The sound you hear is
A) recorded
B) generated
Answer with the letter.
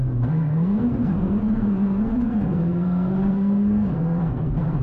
B